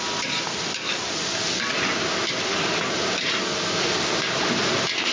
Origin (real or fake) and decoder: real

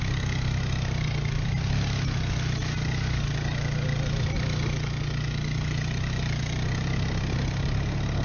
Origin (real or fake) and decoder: real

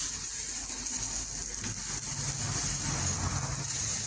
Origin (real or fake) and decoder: real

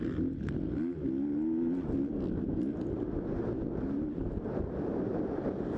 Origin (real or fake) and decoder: real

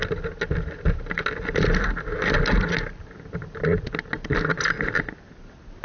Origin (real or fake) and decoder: real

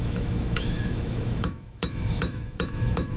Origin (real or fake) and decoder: fake, autoencoder, DAC-VAE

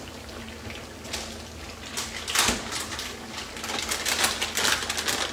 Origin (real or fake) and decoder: real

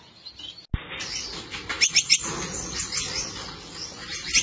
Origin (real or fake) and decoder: real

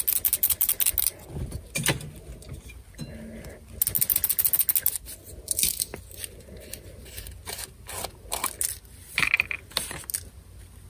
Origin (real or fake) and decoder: real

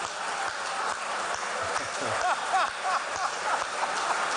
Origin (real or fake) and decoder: real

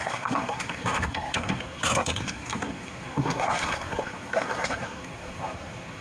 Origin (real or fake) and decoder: fake, codec, SNAC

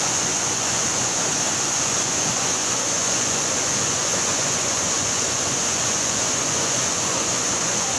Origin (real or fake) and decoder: fake, vocoder, Vocos